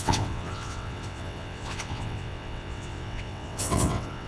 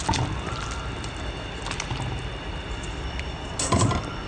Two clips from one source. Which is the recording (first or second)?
second